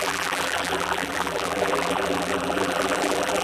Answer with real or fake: fake